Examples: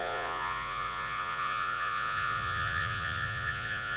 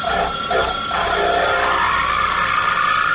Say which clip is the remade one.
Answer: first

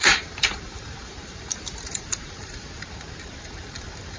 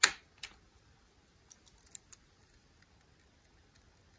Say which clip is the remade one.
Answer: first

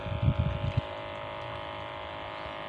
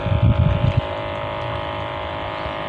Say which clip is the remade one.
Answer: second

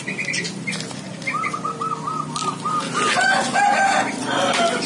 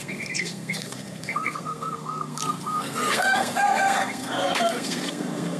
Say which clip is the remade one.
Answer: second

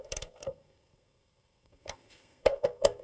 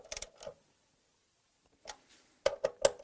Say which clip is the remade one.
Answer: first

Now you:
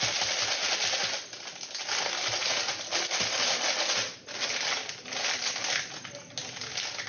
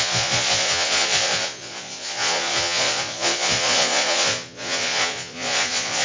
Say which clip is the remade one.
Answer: second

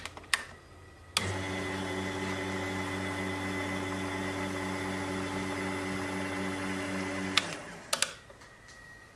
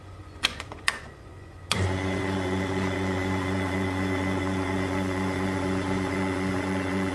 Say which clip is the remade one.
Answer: second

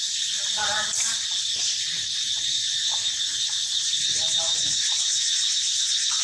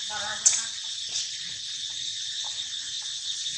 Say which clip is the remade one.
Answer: first